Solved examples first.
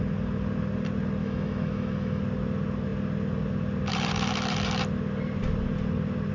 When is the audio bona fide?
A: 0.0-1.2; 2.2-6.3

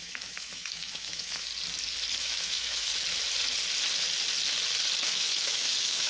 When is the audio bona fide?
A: 1.5-2.2; 2.9-5.0

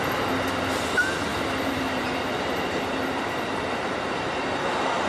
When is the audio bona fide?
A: 0.0-1.3; 3.6-5.1

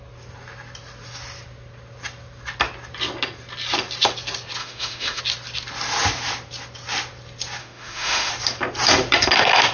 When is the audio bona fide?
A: 0.0-4.6; 5.2-7.6; 8.3-9.7

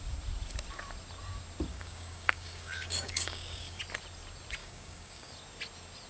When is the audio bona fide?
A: 0.0-1.7; 3.8-4.6; 5.3-6.1